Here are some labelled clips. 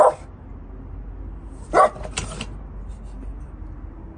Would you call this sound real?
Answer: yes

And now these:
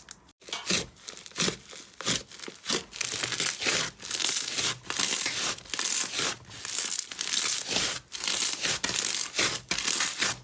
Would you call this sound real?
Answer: yes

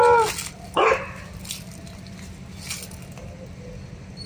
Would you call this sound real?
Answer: yes